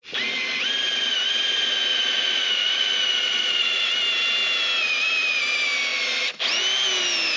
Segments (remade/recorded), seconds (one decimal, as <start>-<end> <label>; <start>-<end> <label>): 0.0-1.9 recorded; 1.9-3.9 remade; 3.9-7.4 recorded